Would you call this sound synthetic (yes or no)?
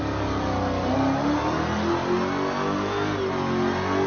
no